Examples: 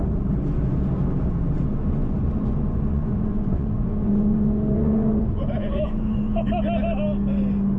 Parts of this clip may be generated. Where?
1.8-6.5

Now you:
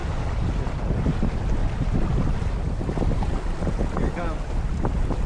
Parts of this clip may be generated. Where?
none

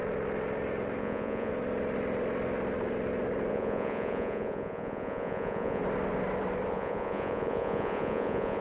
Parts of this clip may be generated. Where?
1.0-1.5; 3.5-5.8; 6.7-8.6

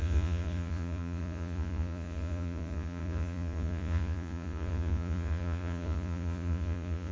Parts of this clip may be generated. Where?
0.0-7.1

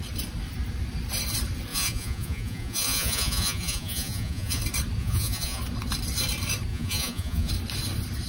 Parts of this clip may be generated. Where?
1.7-4.6; 5.0-5.6; 6.7-7.5

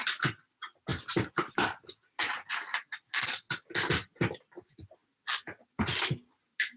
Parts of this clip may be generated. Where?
none

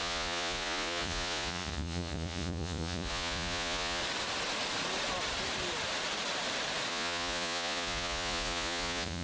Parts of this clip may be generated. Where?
0.0-4.0; 6.9-9.2